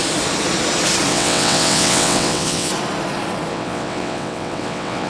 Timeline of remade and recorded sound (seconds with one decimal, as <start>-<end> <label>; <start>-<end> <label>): 0.0-1.1 recorded; 1.1-2.7 remade; 2.7-3.5 recorded; 3.5-5.1 remade